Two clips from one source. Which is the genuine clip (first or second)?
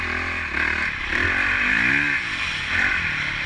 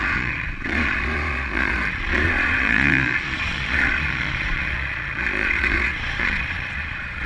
first